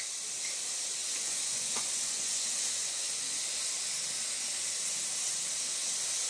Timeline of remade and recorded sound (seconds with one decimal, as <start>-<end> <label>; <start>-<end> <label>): 0.0-1.0 recorded; 1.0-3.2 remade; 3.2-6.3 recorded